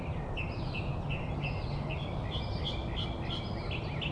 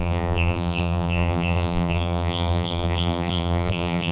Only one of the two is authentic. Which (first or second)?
first